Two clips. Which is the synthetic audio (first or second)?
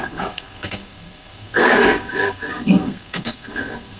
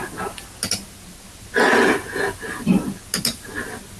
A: first